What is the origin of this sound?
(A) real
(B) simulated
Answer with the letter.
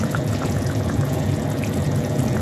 B